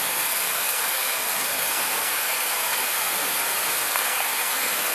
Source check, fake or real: fake